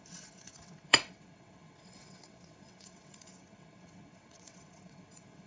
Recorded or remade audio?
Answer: remade